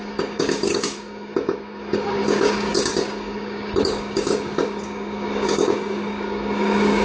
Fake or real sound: fake